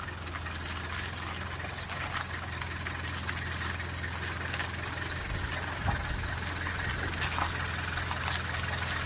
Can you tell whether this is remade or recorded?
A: recorded